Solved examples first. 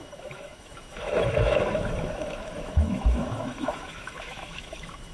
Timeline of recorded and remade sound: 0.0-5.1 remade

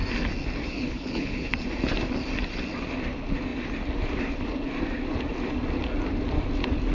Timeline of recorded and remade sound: 0.0-0.7 recorded; 0.7-1.5 remade; 1.5-6.9 recorded

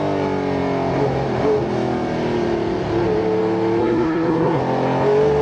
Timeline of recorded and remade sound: 0.0-3.8 recorded; 3.8-4.6 remade; 4.6-5.4 recorded